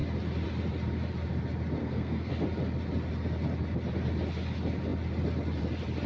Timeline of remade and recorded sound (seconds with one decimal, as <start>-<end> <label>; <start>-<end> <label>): 0.0-1.8 recorded; 1.8-2.3 remade; 2.3-6.1 recorded